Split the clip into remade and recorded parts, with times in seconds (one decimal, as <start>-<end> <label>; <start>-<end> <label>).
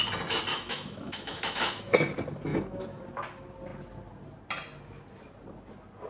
0.0-0.5 recorded; 0.5-1.8 remade; 1.8-2.5 recorded; 2.5-3.0 remade; 3.0-6.1 recorded